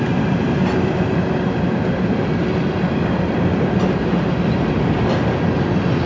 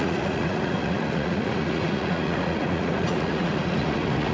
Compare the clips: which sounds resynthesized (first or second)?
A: second